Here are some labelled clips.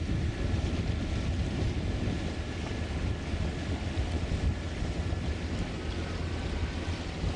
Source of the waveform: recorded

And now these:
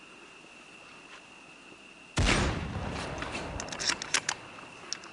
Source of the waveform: recorded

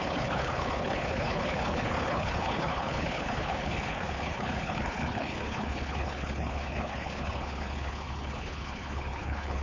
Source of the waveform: remade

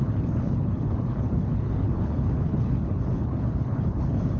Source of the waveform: remade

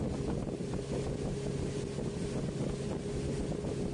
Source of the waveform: recorded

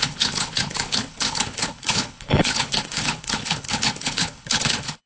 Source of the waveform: remade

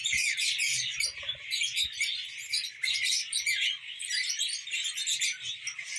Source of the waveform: recorded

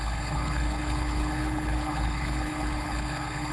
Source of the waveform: remade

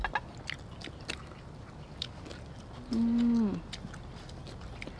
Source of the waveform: recorded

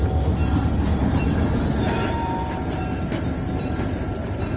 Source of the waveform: recorded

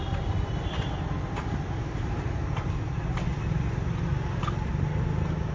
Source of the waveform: recorded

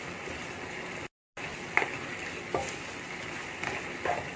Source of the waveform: recorded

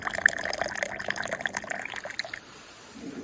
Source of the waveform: recorded